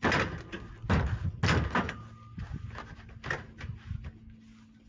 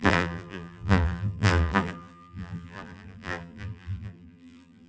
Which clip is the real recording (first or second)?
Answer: first